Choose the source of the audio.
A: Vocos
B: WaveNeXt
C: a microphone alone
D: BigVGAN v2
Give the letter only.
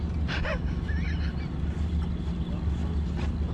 C